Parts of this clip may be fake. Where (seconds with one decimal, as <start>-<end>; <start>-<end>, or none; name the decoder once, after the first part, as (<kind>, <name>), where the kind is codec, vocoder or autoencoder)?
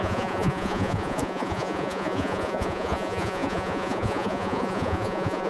0.0-5.5 (vocoder, Vocos)